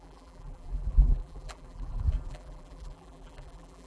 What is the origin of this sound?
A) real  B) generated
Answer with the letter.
B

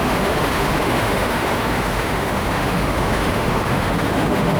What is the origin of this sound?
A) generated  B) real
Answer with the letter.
A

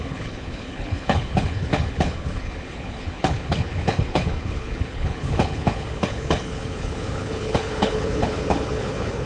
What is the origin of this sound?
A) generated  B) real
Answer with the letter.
A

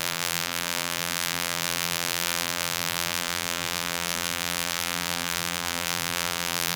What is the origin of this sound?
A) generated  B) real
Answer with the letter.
A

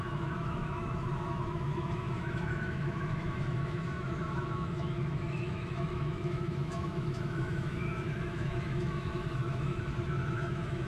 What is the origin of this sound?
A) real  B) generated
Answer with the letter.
B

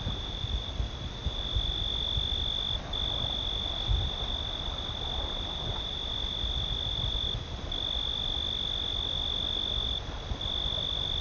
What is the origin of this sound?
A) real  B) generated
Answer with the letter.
A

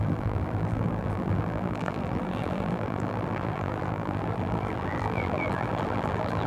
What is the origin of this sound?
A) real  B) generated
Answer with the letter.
B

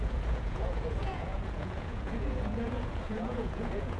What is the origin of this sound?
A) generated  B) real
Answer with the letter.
A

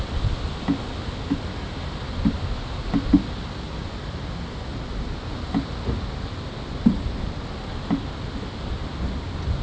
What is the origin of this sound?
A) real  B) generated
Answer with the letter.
A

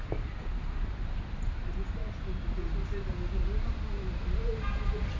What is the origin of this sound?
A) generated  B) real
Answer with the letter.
B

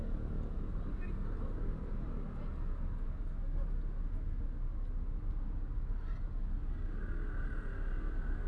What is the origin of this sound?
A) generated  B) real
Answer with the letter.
B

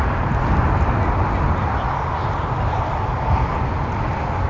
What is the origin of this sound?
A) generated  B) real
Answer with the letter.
B